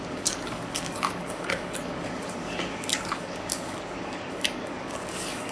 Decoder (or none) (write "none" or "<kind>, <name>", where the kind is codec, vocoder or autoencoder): codec, DAC